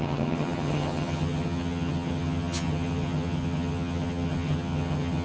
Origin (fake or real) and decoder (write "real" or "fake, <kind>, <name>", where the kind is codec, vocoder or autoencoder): fake, vocoder, HiFi-GAN